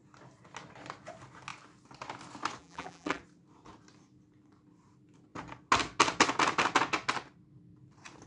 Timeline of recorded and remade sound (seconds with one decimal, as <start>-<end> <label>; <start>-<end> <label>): 0.0-2.6 recorded; 2.6-3.2 remade; 3.2-8.3 recorded